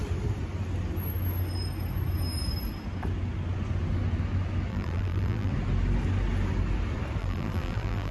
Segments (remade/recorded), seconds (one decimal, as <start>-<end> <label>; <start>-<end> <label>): 0.0-4.7 recorded; 4.7-5.5 remade; 5.5-7.2 recorded; 7.2-8.1 remade